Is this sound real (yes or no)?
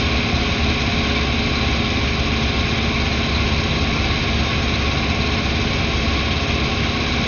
yes